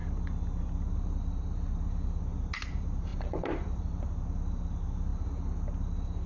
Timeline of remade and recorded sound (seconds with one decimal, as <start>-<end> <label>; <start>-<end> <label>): 0.0-3.1 recorded; 3.1-3.9 remade; 3.9-6.3 recorded